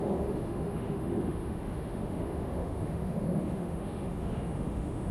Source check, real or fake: fake